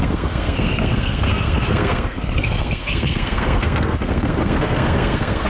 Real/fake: fake